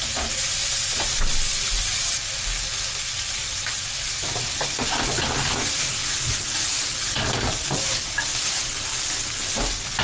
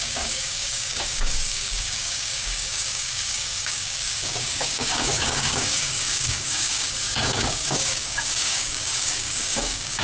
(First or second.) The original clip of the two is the first